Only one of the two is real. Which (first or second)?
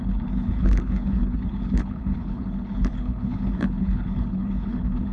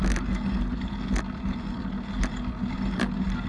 second